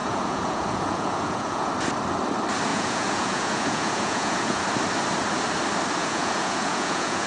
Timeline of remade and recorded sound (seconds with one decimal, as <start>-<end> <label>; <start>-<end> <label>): 0.0-1.7 remade; 1.7-2.7 recorded; 2.7-4.6 remade; 4.6-6.0 recorded; 6.0-7.3 remade

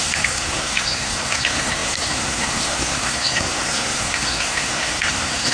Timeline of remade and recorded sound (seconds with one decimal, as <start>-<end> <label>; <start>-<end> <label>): 0.0-5.5 remade

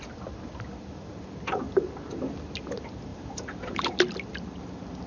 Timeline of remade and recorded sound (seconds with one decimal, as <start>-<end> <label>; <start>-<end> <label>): 0.0-3.1 recorded; 3.1-3.9 remade; 3.9-5.1 recorded